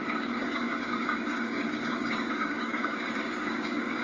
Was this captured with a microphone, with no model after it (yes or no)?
no